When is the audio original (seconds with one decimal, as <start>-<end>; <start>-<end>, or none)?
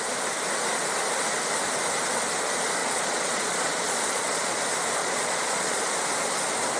0.0-2.8; 4.6-5.0; 5.8-6.8